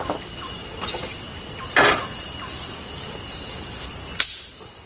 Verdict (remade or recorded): recorded